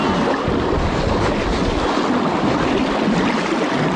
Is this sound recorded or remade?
recorded